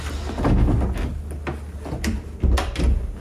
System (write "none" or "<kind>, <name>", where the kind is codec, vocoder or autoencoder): none